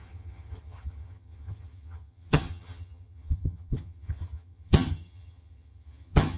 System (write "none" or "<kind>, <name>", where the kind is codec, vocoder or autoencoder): vocoder, HiFi-GAN